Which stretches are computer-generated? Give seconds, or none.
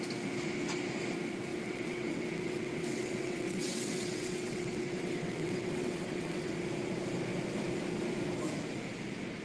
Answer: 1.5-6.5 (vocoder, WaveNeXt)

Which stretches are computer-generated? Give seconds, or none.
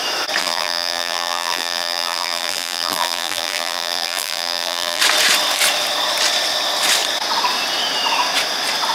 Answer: 0.4-5.0 (vocoder, BigVGAN v2)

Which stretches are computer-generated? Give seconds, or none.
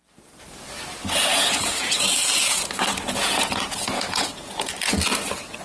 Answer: 1.3-4.7 (vocoder, Vocos)